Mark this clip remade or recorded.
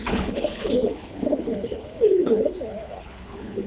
remade